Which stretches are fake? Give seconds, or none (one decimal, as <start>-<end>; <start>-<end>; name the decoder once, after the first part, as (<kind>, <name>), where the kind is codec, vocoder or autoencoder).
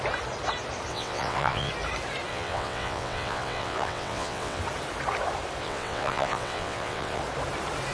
0.9-1.7 (vocoder, WaveNeXt); 2.3-4.6; 5.6-7.2